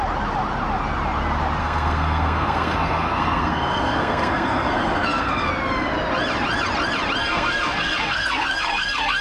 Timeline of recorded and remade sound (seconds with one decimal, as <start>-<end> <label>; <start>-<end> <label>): 0.0-1.6 recorded; 1.6-5.5 remade; 5.5-7.2 recorded; 7.2-9.2 remade